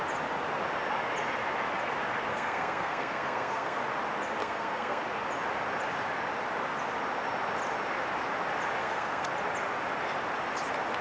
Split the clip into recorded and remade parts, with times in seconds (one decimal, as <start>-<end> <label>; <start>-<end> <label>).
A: 0.0-2.3 recorded; 2.3-3.8 remade; 3.8-4.4 recorded; 4.4-5.0 remade; 5.0-8.8 recorded; 8.8-9.3 remade; 9.3-11.0 recorded